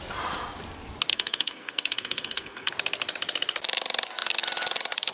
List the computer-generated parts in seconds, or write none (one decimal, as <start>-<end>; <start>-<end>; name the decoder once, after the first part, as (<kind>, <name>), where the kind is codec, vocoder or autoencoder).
1.1-2.7 (codec, SNAC)